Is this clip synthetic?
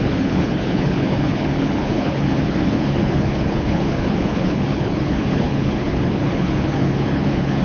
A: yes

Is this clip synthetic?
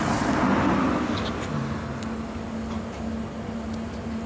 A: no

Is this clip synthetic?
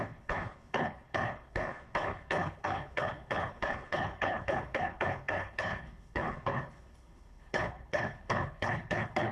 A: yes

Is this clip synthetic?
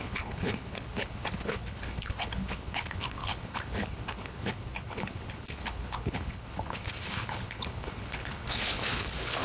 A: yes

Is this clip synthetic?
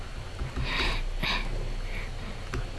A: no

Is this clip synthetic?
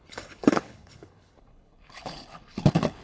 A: yes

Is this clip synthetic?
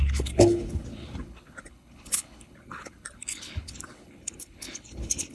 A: yes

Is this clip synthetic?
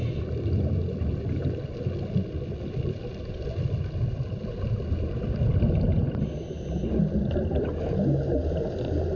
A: no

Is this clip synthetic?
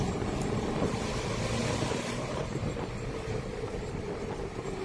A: no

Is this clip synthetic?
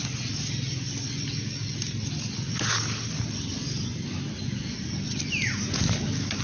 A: no